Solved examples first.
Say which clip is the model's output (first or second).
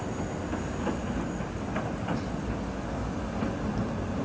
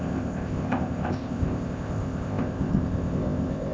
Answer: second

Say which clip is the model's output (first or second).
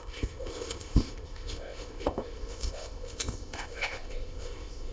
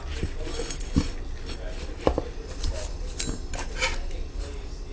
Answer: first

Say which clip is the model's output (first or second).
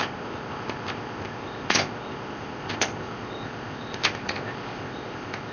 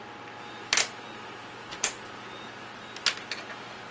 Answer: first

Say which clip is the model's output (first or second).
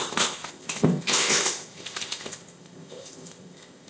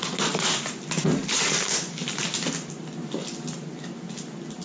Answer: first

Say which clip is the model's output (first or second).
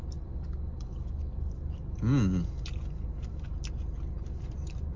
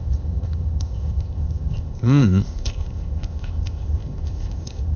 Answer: second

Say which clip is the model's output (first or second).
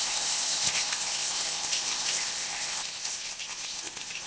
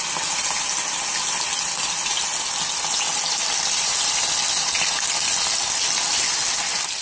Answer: first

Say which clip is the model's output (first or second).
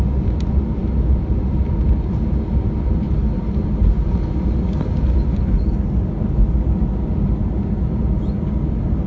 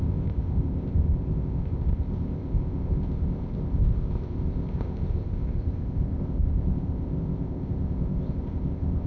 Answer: second